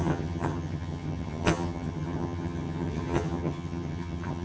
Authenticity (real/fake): fake